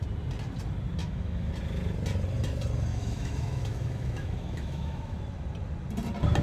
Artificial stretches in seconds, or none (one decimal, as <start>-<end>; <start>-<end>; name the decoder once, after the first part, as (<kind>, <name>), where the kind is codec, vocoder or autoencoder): 1.0-1.5 (autoencoder, DAC-VAE); 2.9-5.2